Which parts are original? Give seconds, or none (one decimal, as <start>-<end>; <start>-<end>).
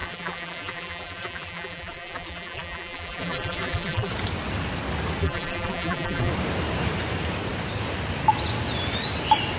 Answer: 4.1-5.2; 6.3-9.6